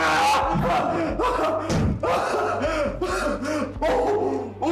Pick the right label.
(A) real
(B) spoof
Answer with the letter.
A